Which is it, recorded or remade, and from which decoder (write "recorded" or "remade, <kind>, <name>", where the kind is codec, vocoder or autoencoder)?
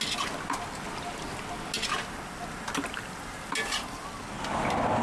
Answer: recorded